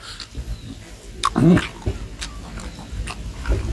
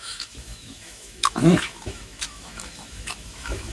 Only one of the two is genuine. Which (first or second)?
first